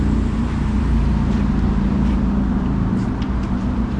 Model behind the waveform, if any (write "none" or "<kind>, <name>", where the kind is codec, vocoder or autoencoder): vocoder, BigVGAN v2